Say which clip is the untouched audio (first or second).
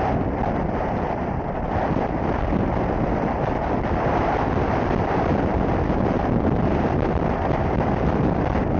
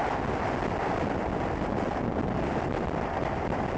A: second